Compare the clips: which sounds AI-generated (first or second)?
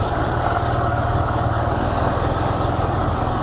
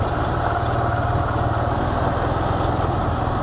first